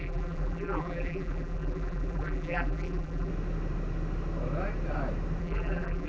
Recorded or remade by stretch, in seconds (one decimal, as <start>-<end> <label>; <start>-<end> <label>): 0.0-3.3 remade; 3.3-5.4 recorded; 5.4-6.1 remade